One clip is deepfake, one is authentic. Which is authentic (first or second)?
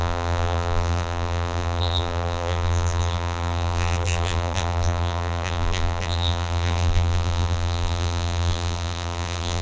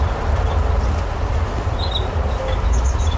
second